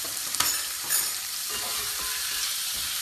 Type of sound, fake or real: fake